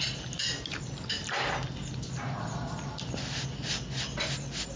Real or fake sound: real